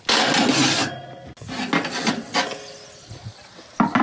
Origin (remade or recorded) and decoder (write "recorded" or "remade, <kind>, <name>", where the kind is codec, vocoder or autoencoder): recorded